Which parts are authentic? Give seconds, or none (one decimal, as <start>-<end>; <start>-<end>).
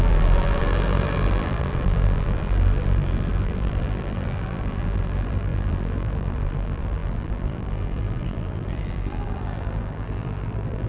none